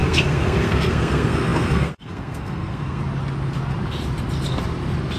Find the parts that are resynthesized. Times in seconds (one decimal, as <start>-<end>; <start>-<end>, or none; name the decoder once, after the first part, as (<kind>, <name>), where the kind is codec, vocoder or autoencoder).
0.0-3.0 (codec, SNAC)